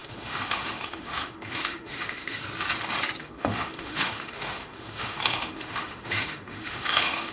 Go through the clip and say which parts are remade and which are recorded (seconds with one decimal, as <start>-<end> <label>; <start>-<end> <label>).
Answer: 0.0-2.4 remade; 2.4-3.2 recorded; 3.2-7.3 remade